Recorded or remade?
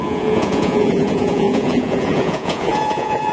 remade